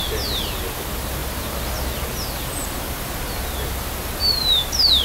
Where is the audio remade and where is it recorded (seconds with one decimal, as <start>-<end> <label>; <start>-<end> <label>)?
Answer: 0.0-5.0 recorded